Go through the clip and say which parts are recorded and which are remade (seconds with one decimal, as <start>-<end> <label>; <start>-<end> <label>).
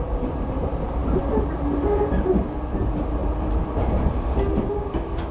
0.0-5.3 recorded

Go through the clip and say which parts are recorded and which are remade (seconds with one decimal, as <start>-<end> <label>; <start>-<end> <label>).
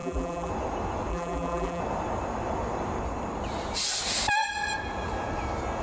0.0-0.5 remade; 0.5-1.1 recorded; 1.1-1.8 remade; 1.8-5.8 recorded